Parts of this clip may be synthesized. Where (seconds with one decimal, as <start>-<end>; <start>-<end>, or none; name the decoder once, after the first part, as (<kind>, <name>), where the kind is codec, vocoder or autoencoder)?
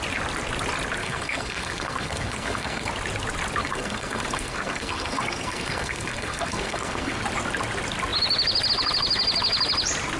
1.0-2.9 (codec, SNAC); 3.6-7.2